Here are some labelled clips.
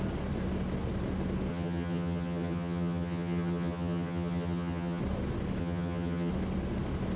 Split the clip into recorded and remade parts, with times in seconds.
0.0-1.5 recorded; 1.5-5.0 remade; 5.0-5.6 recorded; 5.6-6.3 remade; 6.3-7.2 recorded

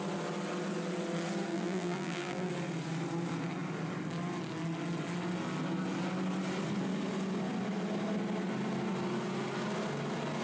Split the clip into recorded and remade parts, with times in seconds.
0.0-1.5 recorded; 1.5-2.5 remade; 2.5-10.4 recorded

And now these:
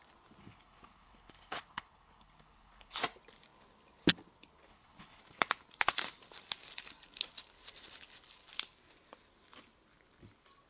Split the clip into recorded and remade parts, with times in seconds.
0.0-0.4 recorded; 0.4-3.0 remade; 3.0-4.7 recorded; 4.7-5.2 remade; 5.2-10.7 recorded

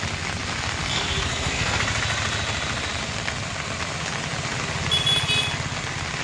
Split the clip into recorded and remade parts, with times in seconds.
0.0-0.8 recorded; 0.8-1.8 remade; 1.8-6.2 recorded

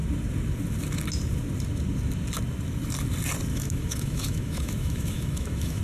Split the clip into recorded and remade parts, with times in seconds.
0.0-3.5 recorded; 3.5-5.8 remade